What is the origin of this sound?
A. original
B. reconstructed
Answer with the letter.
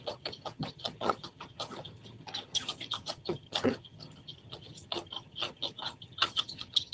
B